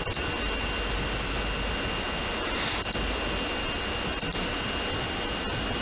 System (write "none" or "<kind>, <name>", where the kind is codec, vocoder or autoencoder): none